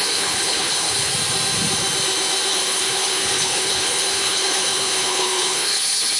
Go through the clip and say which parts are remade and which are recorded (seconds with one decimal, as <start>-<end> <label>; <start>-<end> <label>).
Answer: 0.0-1.1 remade; 1.1-2.5 recorded; 2.5-6.2 remade